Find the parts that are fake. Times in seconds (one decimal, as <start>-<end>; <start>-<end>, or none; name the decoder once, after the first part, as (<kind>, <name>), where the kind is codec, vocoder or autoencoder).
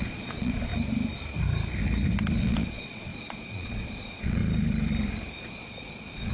0.0-0.7 (vocoder, Vocos); 2.4-4.4; 5.4-6.3